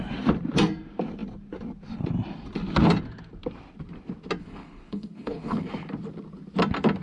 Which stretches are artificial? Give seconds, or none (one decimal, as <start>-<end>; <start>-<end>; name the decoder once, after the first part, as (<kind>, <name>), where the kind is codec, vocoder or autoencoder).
4.4-5.7 (codec, HILCodec)